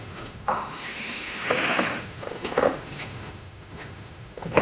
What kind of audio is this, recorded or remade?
remade